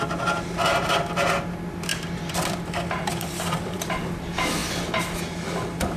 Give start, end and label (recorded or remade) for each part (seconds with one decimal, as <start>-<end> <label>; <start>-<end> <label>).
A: 0.0-1.9 recorded; 1.9-4.0 remade; 4.0-6.0 recorded